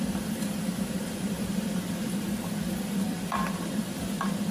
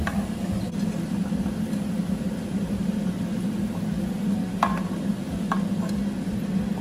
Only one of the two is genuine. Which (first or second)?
second